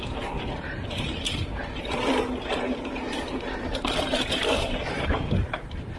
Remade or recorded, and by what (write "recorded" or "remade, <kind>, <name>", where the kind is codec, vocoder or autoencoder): remade, vocoder, BigVGAN v2